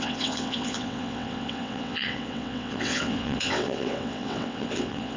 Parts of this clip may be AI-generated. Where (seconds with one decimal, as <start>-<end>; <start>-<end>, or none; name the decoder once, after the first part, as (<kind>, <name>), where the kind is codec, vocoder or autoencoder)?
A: 0.0-5.2 (vocoder, WaveNeXt)